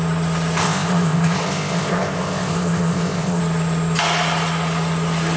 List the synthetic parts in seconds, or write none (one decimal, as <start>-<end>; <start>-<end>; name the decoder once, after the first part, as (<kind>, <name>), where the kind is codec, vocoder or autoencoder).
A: 0.6-3.4 (codec, ZipCodec)